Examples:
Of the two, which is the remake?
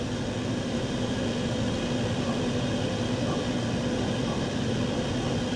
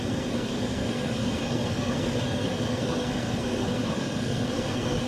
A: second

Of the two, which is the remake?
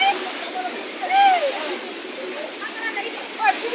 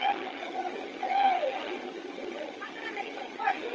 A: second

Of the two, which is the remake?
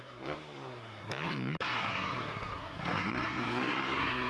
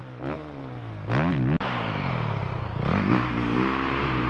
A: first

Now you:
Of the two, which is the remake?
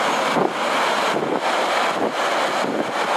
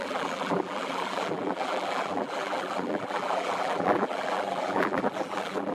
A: second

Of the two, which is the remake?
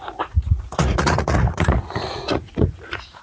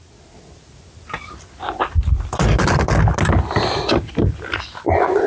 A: first